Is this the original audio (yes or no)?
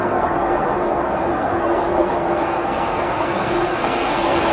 no